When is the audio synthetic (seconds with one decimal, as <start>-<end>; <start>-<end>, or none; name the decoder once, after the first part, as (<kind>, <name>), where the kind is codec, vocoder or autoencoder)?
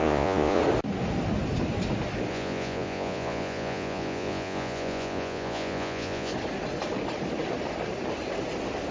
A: 0.0-0.6 (vocoder, Vocos); 2.3-6.3